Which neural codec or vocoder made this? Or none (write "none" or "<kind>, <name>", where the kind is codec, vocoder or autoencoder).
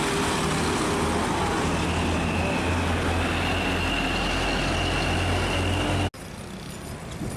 none